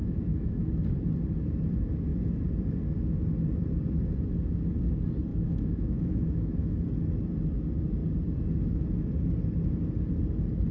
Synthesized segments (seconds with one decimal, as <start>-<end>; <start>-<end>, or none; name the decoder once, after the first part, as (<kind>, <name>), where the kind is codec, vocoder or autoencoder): 0.0-0.7 (autoencoder, DAC-VAE); 5.3-6.8